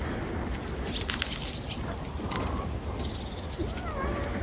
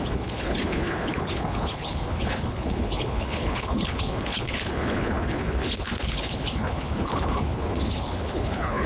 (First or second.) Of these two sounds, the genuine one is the first